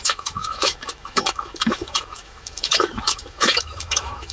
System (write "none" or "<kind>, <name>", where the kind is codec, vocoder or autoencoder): autoencoder, DAC-VAE